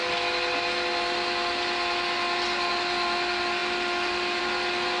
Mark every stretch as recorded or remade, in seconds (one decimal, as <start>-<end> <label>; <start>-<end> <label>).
0.0-5.0 recorded